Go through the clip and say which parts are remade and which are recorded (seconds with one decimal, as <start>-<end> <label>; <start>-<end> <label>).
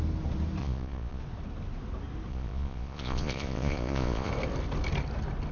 0.0-0.6 recorded; 0.6-1.2 remade; 1.2-2.3 recorded; 2.3-4.3 remade; 4.3-5.5 recorded